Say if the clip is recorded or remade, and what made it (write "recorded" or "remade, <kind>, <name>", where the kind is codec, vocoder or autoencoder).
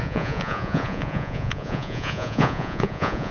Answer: remade, vocoder, Vocos